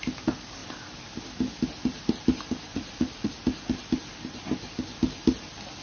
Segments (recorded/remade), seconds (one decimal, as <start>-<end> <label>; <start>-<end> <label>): 0.0-2.7 recorded; 2.7-3.3 remade; 3.3-5.8 recorded